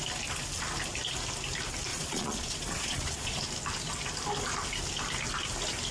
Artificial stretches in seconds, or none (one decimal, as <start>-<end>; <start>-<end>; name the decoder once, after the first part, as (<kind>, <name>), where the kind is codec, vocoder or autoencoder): 1.9-3.4 (vocoder, Vocos)